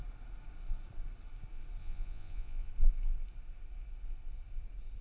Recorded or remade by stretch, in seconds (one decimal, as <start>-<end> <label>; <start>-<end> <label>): 0.0-1.8 recorded; 1.8-2.7 remade; 2.7-5.0 recorded

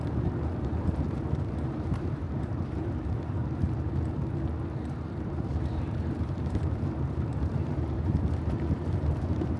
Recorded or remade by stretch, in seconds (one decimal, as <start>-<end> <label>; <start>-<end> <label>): 0.0-3.4 remade; 3.4-5.2 recorded; 5.2-9.6 remade